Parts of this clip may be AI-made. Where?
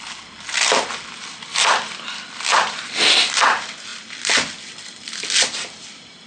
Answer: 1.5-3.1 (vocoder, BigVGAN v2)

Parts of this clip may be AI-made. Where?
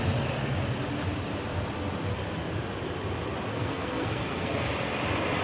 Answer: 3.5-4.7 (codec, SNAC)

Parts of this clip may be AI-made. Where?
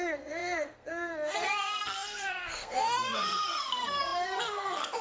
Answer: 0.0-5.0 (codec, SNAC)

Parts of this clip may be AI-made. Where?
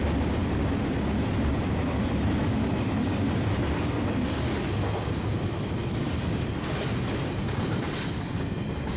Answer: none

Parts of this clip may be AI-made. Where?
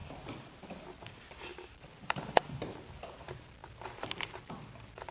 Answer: 0.0-0.7 (vocoder, BigVGAN v2); 1.5-3.0; 3.6-4.5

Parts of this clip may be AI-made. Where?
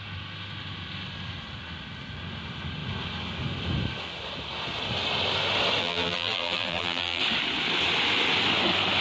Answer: 5.8-7.2 (vocoder, BigVGAN v2)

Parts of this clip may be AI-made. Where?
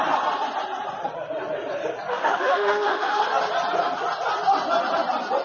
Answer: 2.1-3.2 (autoencoder, DAC-VAE)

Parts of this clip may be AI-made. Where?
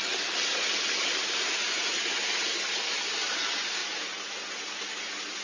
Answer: 1.0-2.0 (vocoder, BigVGAN v2)